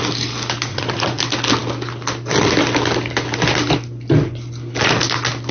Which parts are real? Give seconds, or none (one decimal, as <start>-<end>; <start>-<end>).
0.0-0.7; 1.2-5.5